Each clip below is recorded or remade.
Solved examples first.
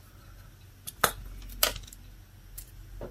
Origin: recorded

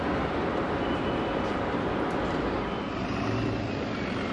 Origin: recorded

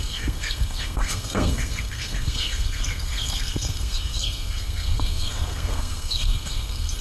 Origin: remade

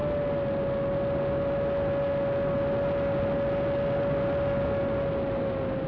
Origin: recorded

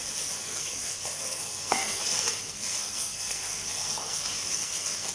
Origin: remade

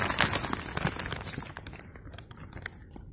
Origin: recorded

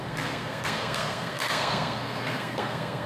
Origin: remade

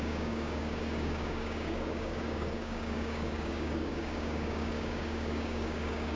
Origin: remade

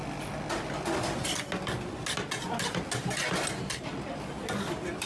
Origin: recorded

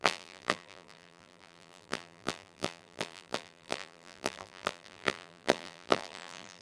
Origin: remade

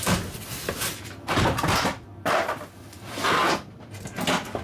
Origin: recorded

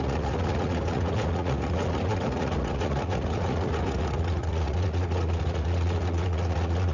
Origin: remade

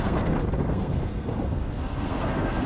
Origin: remade